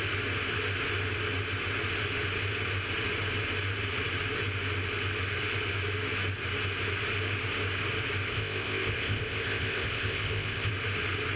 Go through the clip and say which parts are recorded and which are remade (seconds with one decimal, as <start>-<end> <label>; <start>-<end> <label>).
0.0-8.3 recorded; 8.3-10.7 remade; 10.7-11.4 recorded